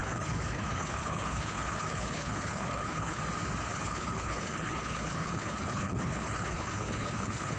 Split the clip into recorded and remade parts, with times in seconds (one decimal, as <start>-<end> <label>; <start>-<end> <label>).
0.0-3.2 remade; 3.2-3.7 recorded; 3.7-7.6 remade